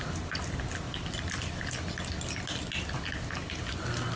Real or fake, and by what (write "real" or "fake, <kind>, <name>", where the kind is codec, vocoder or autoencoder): real